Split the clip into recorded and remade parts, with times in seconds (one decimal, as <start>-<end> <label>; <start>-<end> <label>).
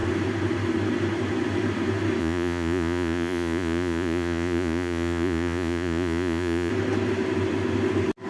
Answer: 0.0-2.2 recorded; 2.2-6.7 remade; 6.7-8.3 recorded